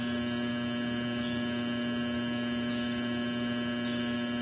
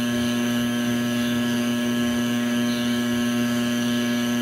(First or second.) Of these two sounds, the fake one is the second